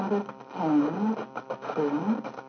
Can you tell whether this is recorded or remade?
recorded